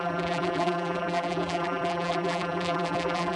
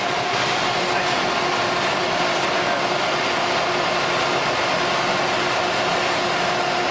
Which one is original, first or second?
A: second